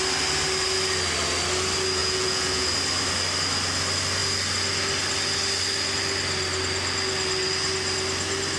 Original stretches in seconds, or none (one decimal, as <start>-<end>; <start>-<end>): 0.0-2.0; 2.7-8.6